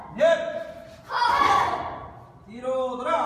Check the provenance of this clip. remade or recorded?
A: recorded